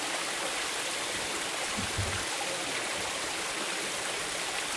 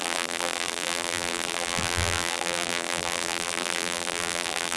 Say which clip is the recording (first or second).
first